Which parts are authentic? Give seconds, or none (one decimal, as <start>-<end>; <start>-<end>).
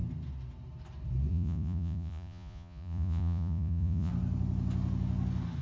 0.0-1.3; 4.1-5.6